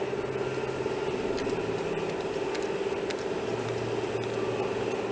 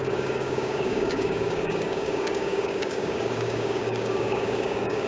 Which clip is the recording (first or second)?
first